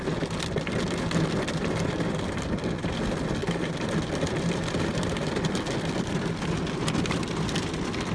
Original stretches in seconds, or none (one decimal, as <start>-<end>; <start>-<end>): 0.0-8.1